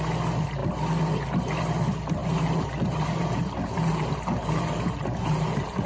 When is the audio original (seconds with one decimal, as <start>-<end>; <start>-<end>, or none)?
0.0-2.2

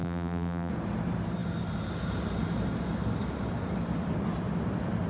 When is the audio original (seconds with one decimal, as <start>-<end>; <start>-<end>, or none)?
0.7-5.1

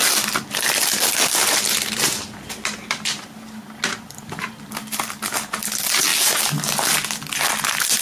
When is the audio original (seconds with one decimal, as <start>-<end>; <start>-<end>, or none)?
0.0-8.0

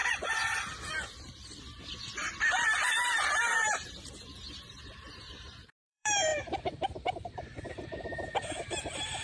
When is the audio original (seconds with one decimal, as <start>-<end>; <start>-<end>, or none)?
0.0-3.1